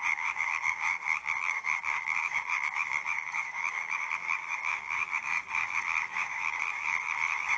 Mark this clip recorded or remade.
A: remade